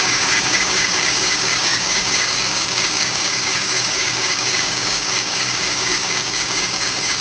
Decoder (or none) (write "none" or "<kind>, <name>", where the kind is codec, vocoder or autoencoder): codec, DAC